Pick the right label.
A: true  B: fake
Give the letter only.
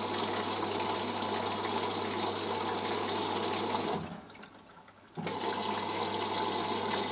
A